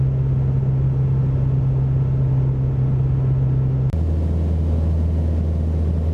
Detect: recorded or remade recorded